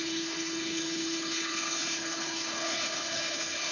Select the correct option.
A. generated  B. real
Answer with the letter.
A